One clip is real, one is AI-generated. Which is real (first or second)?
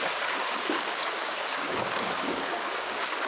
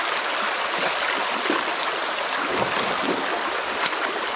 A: second